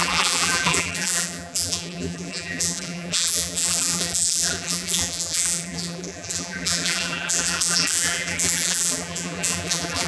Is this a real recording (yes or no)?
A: no